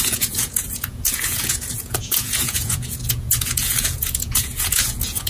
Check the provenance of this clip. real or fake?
fake